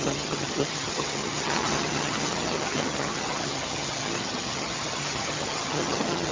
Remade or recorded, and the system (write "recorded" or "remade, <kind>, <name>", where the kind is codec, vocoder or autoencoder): remade, vocoder, HiFi-GAN